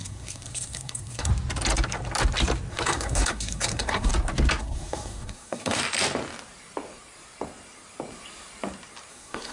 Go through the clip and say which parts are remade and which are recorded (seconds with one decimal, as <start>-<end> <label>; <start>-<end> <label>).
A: 0.0-1.3 remade; 1.3-2.7 recorded; 2.7-4.1 remade; 4.1-4.6 recorded; 4.6-5.8 remade; 5.8-9.1 recorded; 9.1-9.5 remade